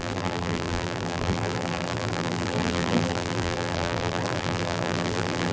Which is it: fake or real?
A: fake